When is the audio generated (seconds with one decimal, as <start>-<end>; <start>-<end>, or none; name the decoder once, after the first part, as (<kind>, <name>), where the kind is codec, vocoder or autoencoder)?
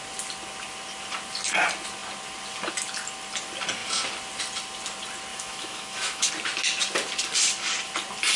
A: 5.3-6.3 (autoencoder, DAC-VAE)